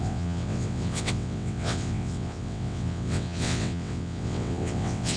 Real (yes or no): no